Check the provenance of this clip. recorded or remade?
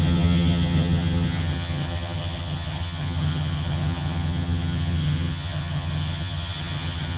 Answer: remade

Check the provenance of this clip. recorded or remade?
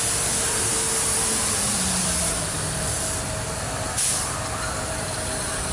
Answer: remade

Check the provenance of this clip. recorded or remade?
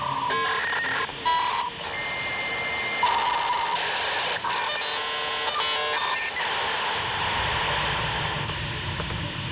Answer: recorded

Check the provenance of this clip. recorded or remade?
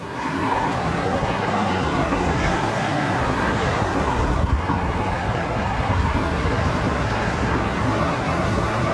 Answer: remade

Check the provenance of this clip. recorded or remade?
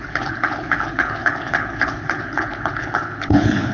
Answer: remade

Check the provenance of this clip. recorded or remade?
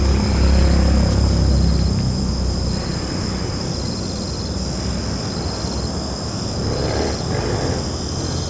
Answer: recorded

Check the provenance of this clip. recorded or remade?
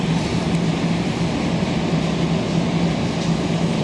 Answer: recorded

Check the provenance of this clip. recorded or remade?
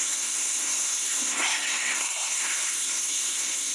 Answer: remade